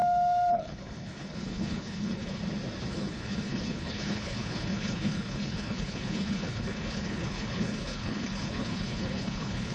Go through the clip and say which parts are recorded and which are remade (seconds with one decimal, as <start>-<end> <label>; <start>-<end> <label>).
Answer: 0.0-0.5 recorded; 0.5-2.4 remade; 2.4-2.9 recorded; 2.9-9.7 remade